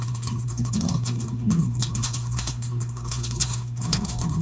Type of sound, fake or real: fake